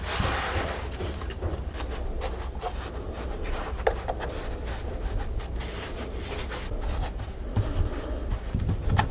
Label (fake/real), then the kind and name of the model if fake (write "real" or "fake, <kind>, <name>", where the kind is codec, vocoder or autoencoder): real